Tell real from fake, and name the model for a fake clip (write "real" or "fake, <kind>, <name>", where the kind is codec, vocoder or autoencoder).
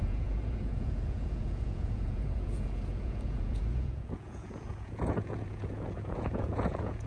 fake, vocoder, Vocos